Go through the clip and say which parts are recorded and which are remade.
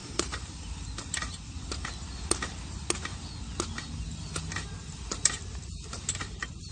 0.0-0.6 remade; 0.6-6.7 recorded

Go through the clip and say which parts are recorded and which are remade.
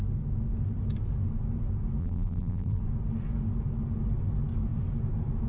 0.0-2.0 recorded; 2.0-2.8 remade; 2.8-5.5 recorded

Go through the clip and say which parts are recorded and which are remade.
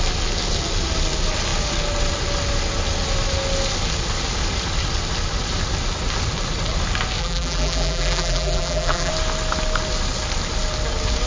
0.0-7.2 recorded; 7.2-9.1 remade; 9.1-11.3 recorded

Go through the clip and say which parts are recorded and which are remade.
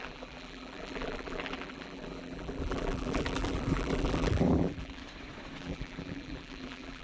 0.0-5.0 remade; 5.0-5.6 recorded; 5.6-7.0 remade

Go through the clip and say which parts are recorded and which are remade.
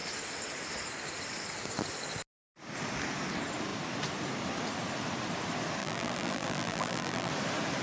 0.0-5.8 recorded; 5.8-7.3 remade; 7.3-7.8 recorded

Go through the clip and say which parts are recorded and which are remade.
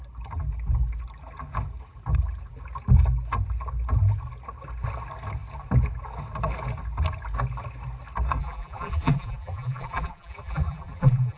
0.0-8.4 recorded; 8.4-11.4 remade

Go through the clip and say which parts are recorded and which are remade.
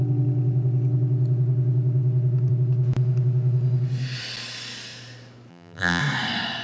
0.0-5.5 recorded; 5.5-6.0 remade; 6.0-6.6 recorded